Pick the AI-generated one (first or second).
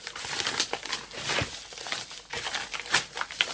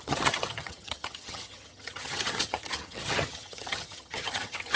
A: second